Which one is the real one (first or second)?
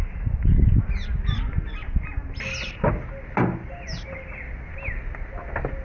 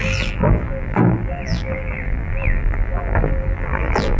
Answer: first